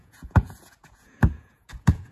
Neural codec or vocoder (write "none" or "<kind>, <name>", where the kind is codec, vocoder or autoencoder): vocoder, Vocos